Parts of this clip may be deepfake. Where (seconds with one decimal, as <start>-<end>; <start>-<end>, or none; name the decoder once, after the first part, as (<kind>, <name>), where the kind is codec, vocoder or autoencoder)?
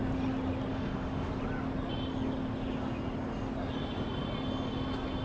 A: 0.7-1.3 (autoencoder, DAC-VAE)